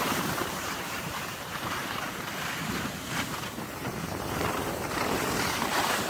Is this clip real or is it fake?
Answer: fake